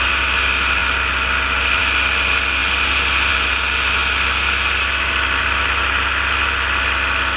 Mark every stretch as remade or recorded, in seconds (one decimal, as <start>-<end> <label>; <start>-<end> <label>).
0.0-7.4 recorded